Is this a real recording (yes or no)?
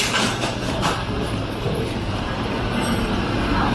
no